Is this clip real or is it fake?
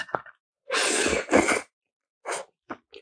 real